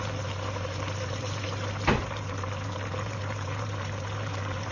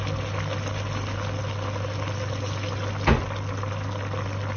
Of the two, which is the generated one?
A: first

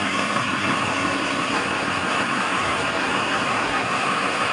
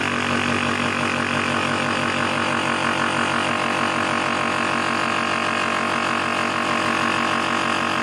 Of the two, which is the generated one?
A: first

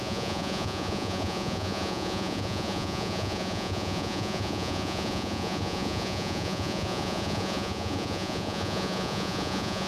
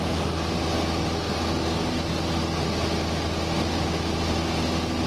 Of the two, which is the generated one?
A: first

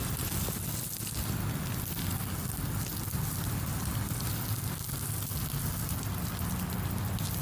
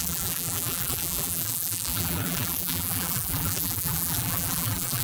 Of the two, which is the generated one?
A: second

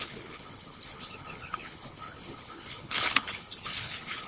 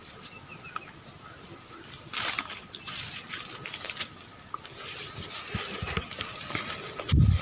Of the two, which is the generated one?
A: first